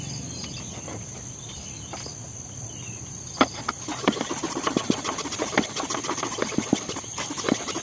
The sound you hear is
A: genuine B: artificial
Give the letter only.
A